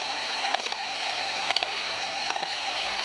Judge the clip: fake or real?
fake